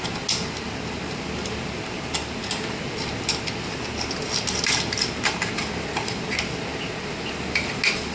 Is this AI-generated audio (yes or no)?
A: no